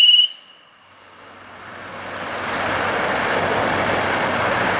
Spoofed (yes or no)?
no